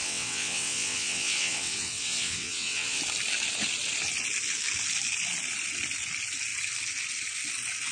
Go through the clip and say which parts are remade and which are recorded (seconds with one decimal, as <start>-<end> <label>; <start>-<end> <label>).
0.0-3.0 remade; 3.0-7.9 recorded